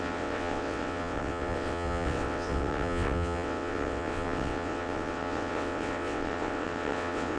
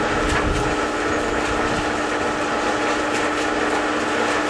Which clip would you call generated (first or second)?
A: first